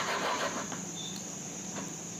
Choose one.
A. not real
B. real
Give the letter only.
A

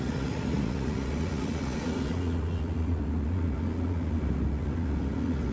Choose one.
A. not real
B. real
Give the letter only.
A